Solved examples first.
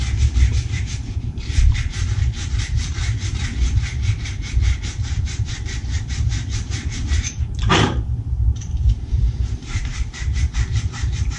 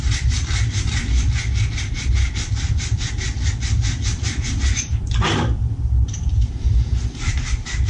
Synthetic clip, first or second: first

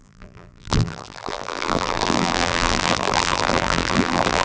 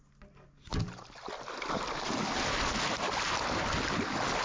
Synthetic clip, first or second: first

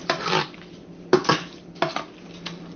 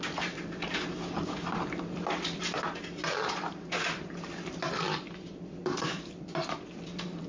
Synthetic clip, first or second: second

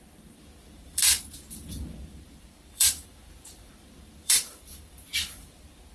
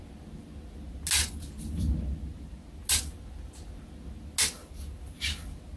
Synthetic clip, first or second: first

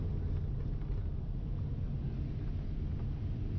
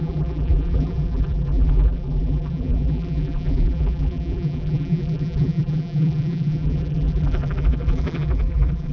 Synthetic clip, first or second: second